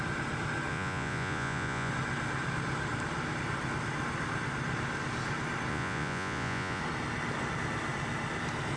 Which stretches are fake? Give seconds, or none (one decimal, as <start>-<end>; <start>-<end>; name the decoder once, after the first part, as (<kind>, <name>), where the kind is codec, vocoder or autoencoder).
0.7-1.9 (vocoder, Vocos); 5.7-6.8